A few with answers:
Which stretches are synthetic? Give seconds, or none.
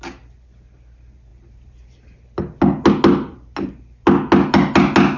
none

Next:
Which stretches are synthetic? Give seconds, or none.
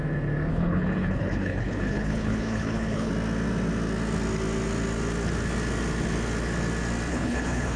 0.5-3.1 (codec, HILCodec); 7.1-7.8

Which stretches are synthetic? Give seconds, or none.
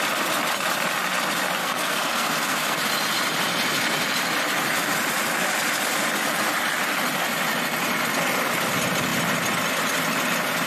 1.6-2.8 (codec, SNAC)